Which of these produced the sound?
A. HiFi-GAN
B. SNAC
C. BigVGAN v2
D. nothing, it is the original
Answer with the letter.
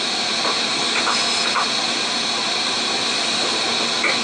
D